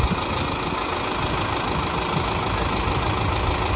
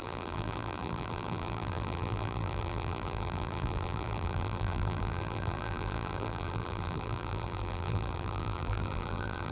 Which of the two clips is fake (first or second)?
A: second